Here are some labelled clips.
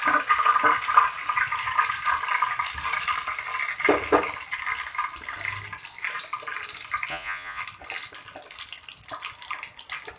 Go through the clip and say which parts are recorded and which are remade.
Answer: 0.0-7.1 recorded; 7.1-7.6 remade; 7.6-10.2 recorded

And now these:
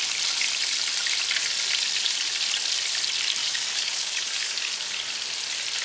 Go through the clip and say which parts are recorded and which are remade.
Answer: 0.0-3.4 recorded; 3.4-5.0 remade; 5.0-5.8 recorded

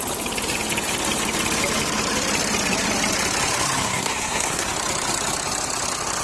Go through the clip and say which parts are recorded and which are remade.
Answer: 0.0-3.8 recorded; 3.8-4.7 remade; 4.7-6.2 recorded

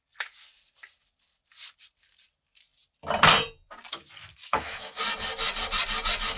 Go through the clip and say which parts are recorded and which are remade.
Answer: 0.0-4.4 recorded; 4.4-5.0 remade; 5.0-6.4 recorded

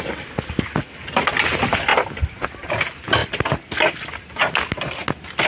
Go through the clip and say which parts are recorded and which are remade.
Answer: 0.0-5.5 recorded

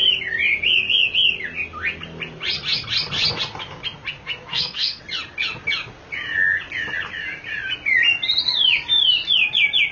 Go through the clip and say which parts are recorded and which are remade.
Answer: 0.0-4.5 recorded; 4.5-5.0 remade; 5.0-9.9 recorded